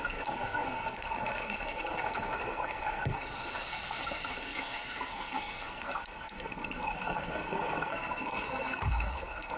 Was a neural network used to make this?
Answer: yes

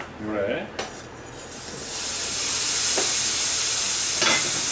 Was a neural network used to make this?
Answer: no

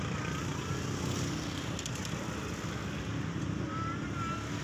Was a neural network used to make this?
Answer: no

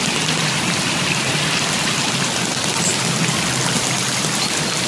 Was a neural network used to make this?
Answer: no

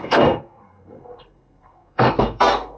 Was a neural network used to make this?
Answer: yes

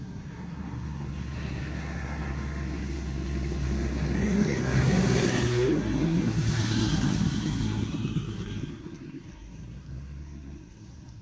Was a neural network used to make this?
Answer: yes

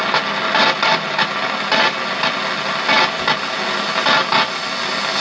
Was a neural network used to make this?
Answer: no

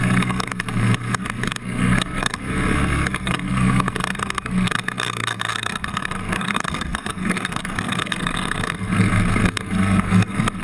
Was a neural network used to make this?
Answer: yes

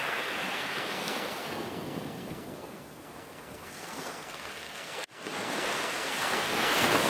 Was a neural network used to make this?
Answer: yes